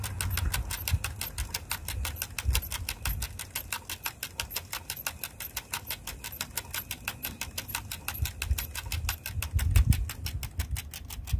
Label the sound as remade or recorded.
recorded